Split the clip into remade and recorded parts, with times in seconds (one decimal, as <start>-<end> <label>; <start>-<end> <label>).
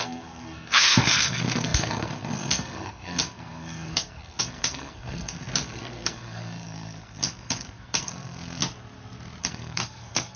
0.0-8.6 remade; 8.6-9.4 recorded; 9.4-10.4 remade